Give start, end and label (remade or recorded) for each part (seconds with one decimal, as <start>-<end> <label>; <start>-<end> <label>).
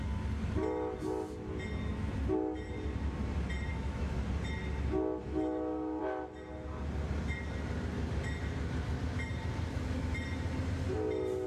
0.0-3.7 recorded; 3.7-4.2 remade; 4.2-5.2 recorded; 5.2-6.0 remade; 6.0-11.5 recorded